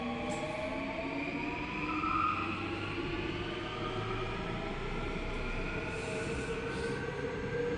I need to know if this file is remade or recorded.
recorded